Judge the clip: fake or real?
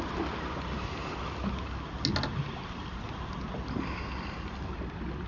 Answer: real